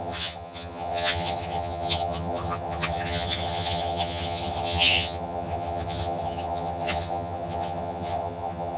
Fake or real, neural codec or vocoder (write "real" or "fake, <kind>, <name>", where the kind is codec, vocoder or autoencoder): fake, vocoder, HiFi-GAN